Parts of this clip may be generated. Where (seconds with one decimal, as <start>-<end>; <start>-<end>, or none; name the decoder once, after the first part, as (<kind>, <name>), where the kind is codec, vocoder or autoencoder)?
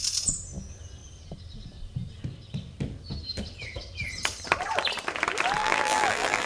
5.6-6.5 (vocoder, BigVGAN v2)